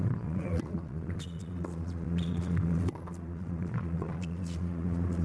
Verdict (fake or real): fake